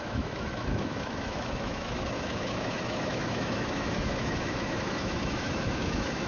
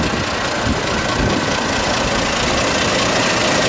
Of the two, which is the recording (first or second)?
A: second